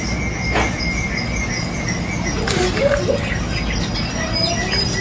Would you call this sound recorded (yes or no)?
yes